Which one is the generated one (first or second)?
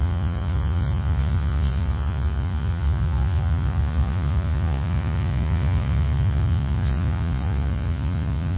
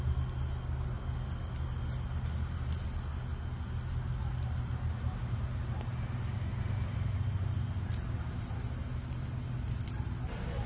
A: first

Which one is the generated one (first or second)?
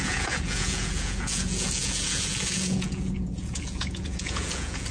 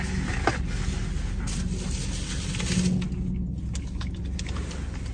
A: first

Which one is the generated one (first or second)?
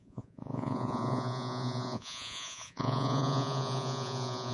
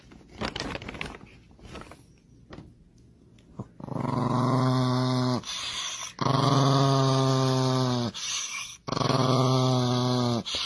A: first